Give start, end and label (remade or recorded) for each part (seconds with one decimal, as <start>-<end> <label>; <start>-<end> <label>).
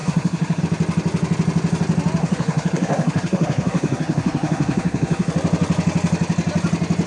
0.0-0.6 remade; 0.6-2.2 recorded; 2.2-5.3 remade; 5.3-7.1 recorded